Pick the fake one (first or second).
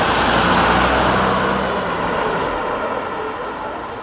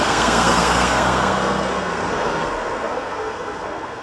second